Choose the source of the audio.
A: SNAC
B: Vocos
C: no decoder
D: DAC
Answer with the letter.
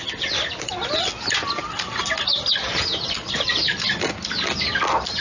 C